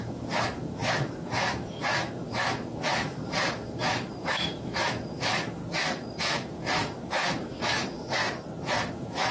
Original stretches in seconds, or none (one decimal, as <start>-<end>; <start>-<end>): 5.6-6.2; 8.2-8.9